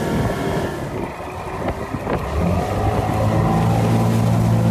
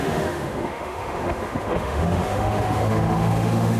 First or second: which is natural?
first